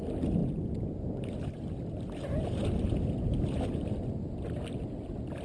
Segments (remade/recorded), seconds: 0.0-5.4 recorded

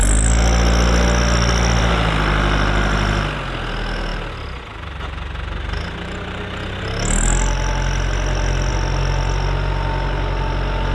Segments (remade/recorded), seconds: 0.0-10.9 recorded

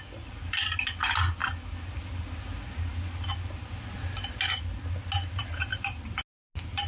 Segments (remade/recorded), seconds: 0.0-6.9 recorded

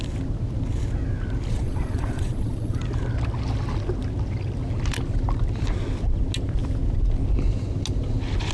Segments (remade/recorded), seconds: 0.0-1.5 recorded; 1.5-2.8 remade; 2.8-8.5 recorded